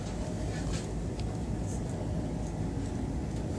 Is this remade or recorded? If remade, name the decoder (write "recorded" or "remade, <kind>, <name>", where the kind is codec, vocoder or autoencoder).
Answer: recorded